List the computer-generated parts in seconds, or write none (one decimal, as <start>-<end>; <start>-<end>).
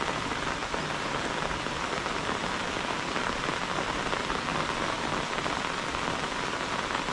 none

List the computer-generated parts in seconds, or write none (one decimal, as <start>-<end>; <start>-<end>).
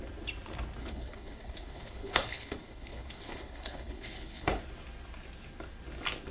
0.8-4.6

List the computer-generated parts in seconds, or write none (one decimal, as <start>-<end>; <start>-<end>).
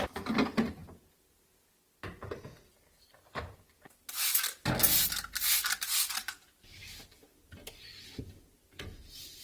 none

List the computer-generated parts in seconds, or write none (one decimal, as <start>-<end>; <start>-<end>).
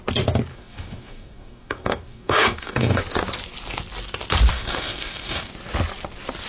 0.5-3.0; 4.5-5.5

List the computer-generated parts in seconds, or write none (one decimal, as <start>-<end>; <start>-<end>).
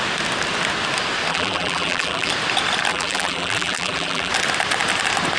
1.3-2.3; 2.9-4.3